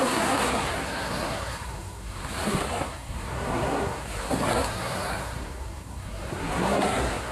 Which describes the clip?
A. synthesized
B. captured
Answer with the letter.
A